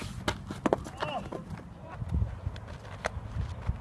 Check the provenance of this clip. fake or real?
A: real